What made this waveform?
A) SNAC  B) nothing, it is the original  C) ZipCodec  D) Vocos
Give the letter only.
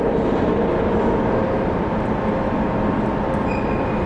B